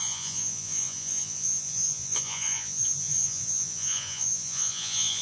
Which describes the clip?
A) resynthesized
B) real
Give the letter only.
A